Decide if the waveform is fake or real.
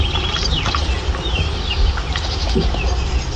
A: fake